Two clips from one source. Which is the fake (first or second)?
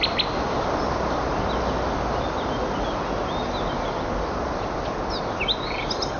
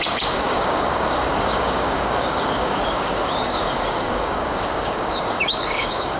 second